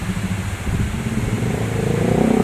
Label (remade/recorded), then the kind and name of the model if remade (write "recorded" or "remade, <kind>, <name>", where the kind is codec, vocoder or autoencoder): recorded